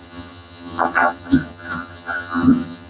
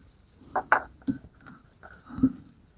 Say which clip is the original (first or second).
second